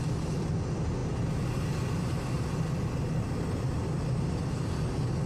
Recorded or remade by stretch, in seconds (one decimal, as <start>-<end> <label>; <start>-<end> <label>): 0.0-5.3 recorded